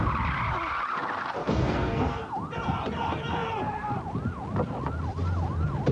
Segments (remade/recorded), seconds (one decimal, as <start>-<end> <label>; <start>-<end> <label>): 0.0-1.4 recorded; 1.4-2.3 remade; 2.3-5.9 recorded